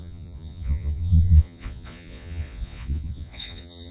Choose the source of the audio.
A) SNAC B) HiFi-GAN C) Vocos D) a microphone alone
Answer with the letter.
C